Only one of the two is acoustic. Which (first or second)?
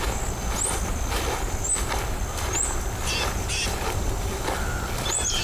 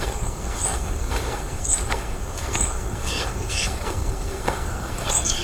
first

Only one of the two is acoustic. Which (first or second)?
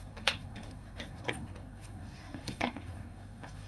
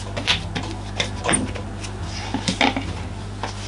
second